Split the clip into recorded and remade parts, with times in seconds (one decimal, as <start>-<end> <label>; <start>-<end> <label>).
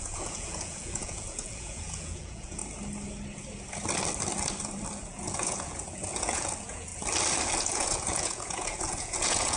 0.0-2.6 remade; 2.6-5.1 recorded; 5.1-6.9 remade; 6.9-7.6 recorded; 7.6-9.6 remade